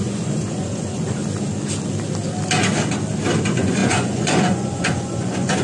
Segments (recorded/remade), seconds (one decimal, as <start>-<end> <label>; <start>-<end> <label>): 0.0-1.2 remade; 1.2-3.4 recorded; 3.4-5.6 remade